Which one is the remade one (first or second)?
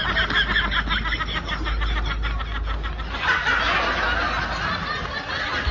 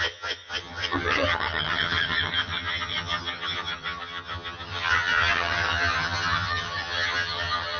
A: second